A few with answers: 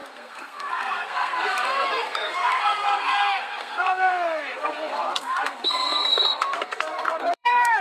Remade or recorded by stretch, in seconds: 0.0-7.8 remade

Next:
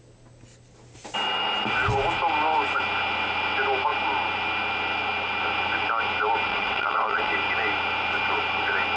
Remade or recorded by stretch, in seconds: 0.0-6.5 recorded; 6.5-7.3 remade; 7.3-9.0 recorded

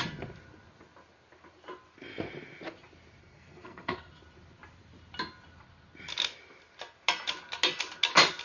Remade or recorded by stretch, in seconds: 0.0-3.2 recorded; 3.2-4.1 remade; 4.1-8.4 recorded

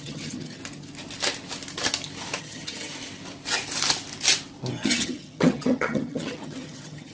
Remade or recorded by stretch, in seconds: 0.0-0.6 remade; 0.6-2.4 recorded; 2.4-2.9 remade; 2.9-4.7 recorded; 4.7-7.1 remade

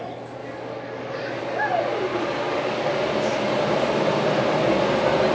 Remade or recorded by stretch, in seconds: 0.0-0.4 recorded; 0.4-1.4 remade; 1.4-2.1 recorded; 2.1-2.9 remade; 2.9-5.3 recorded

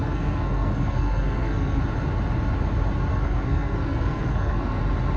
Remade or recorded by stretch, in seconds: 0.0-1.8 remade; 1.8-3.1 recorded; 3.1-4.8 remade; 4.8-5.2 recorded

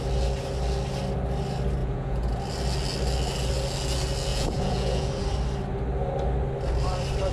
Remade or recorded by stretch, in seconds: 0.0-1.8 recorded; 1.8-2.4 remade; 2.4-4.3 recorded; 4.3-5.1 remade; 5.1-7.3 recorded

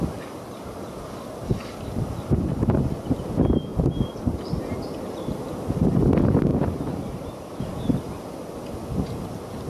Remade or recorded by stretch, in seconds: 0.0-3.7 recorded; 3.7-4.6 remade; 4.6-6.5 recorded; 6.5-7.6 remade; 7.6-9.7 recorded